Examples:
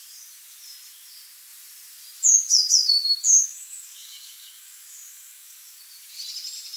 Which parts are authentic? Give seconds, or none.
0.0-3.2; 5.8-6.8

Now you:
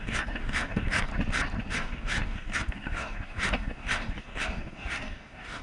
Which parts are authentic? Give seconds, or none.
1.1-1.7

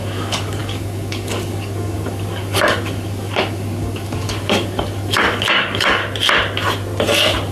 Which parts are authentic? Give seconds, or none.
6.0-7.5

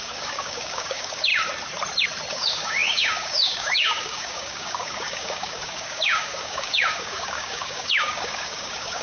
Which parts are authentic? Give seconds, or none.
1.3-2.3

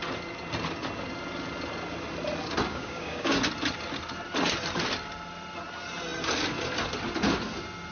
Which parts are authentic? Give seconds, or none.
0.0-2.7; 3.4-7.9

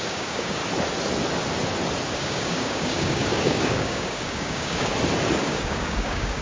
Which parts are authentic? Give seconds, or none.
0.6-2.2; 4.9-5.4

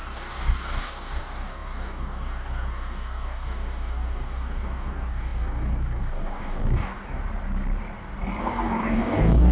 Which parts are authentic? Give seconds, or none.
7.2-8.4